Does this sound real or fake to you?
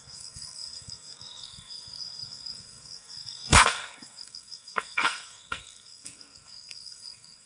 fake